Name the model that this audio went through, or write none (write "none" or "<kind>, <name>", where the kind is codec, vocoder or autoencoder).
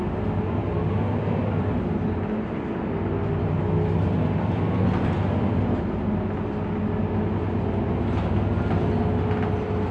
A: none